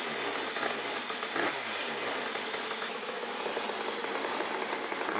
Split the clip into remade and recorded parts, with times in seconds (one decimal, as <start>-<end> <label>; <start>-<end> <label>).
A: 0.0-2.4 recorded; 2.4-3.4 remade; 3.4-5.2 recorded